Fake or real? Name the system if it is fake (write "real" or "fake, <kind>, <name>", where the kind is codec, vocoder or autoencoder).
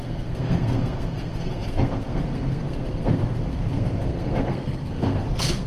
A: fake, codec, SNAC